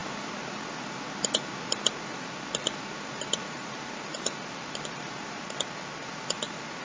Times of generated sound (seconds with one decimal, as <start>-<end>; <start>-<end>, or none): 0.0-5.4; 6.0-6.8